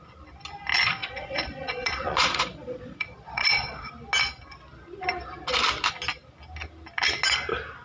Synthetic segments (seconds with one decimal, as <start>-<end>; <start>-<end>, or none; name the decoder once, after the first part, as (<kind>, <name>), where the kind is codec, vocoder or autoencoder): 1.0-3.9 (vocoder, Vocos)